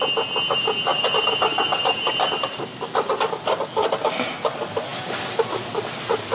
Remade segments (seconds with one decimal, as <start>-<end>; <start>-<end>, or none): none